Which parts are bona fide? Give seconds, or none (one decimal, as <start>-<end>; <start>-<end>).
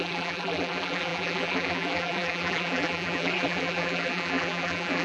none